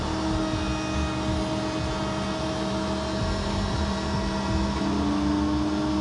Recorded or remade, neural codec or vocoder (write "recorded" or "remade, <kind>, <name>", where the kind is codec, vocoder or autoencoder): recorded